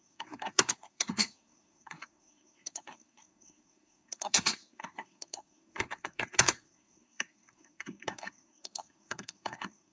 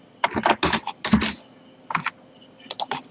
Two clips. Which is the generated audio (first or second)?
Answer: first